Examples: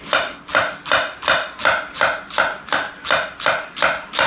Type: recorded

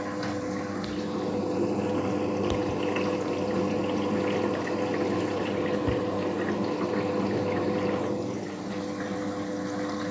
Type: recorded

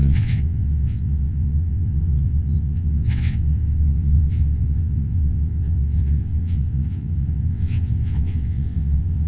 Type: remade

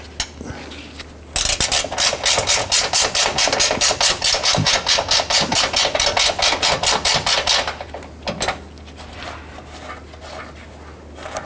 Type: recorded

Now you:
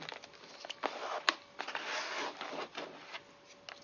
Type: recorded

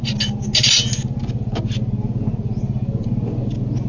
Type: recorded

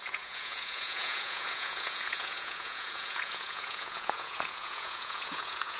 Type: remade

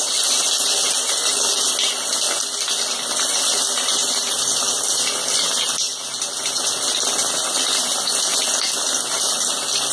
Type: recorded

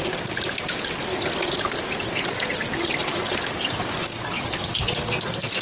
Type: recorded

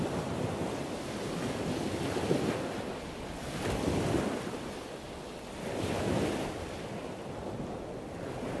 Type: recorded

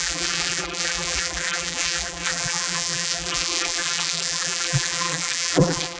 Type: remade